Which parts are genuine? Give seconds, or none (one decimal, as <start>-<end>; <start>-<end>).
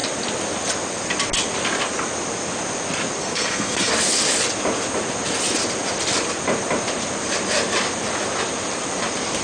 0.0-3.2; 3.9-9.4